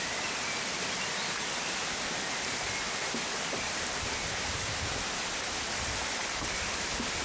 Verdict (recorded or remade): recorded